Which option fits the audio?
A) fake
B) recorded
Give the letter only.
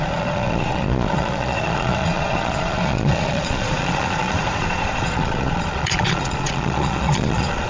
A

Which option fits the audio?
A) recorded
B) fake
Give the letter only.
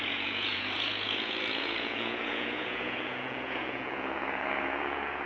B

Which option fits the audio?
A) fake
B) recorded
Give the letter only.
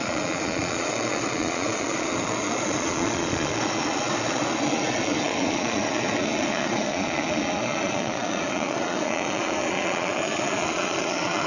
A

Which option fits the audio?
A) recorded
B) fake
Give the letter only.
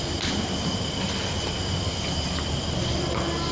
A